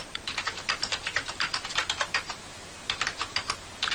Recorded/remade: recorded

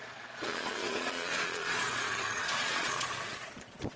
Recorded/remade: remade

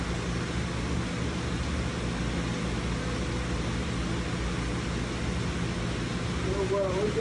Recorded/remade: recorded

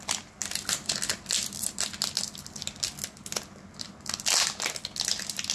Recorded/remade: recorded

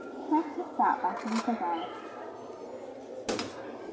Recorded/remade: recorded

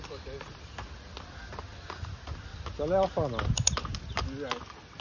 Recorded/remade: recorded